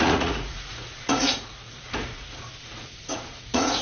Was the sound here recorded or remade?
remade